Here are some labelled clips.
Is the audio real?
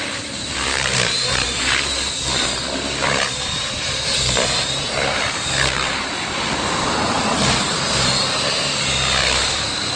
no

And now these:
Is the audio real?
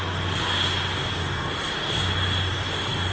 yes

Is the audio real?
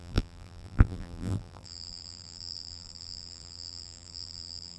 no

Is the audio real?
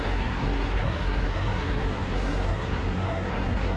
no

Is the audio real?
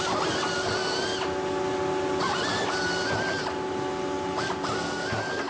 yes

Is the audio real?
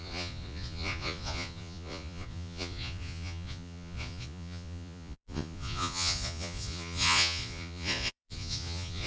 no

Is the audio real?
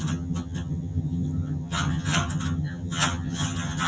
no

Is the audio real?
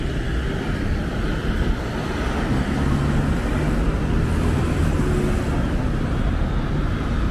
yes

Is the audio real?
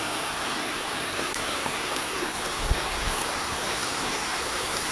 no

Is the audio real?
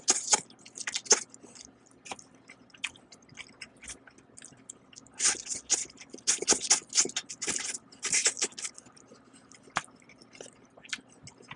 yes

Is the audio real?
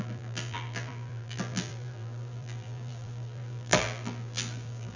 no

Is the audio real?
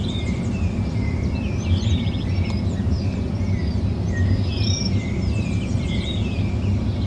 yes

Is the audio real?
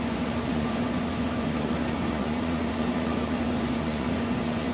no